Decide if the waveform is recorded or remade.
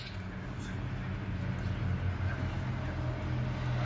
recorded